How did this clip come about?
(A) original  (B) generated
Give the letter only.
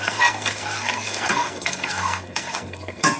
B